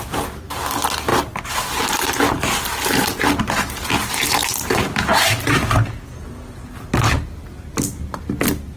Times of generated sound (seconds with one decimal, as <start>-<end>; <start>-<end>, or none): none